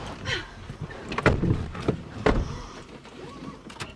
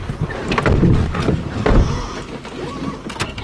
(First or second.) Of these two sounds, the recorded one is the second